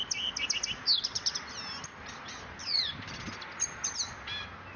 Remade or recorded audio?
recorded